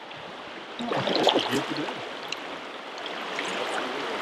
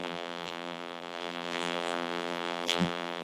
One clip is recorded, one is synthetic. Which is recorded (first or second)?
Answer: first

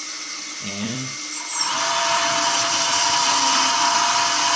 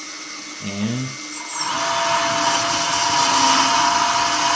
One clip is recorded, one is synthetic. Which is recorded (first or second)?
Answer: second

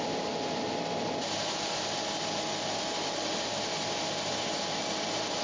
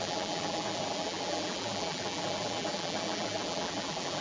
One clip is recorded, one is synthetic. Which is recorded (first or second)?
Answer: first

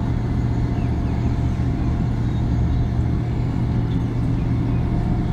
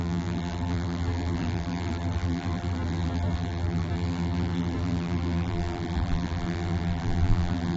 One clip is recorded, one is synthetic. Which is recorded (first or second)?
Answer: first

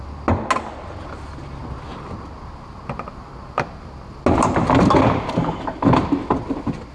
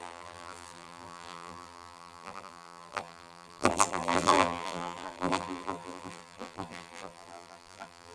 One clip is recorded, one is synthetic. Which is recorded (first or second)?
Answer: first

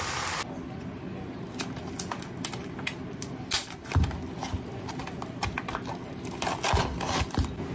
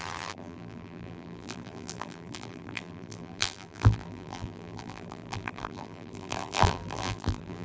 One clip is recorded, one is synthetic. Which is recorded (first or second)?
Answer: first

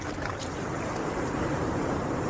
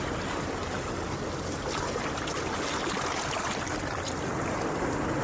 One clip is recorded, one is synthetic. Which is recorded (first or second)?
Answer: second